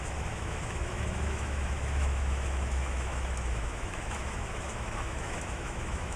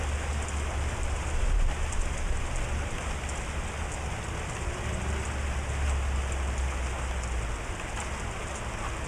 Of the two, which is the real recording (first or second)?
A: second